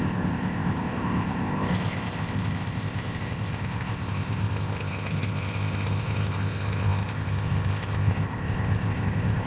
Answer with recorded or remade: remade